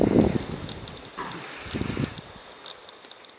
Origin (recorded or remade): recorded